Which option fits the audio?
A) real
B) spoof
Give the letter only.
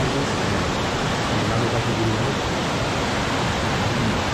A